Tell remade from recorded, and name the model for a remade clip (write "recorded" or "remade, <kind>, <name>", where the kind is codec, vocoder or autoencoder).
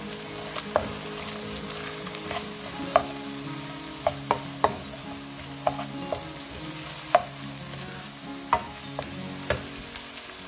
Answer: recorded